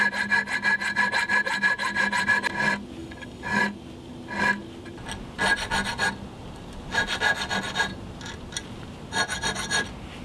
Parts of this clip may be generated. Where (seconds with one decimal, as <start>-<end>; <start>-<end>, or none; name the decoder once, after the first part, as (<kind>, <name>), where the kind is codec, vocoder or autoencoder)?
3.0-3.6 (codec, DAC)